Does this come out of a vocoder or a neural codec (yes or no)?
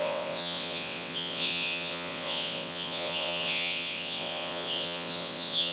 yes